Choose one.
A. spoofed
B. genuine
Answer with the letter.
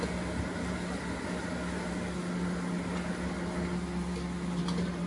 B